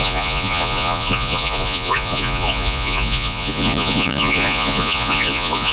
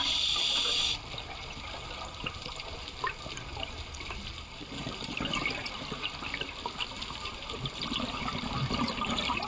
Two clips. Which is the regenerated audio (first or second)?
first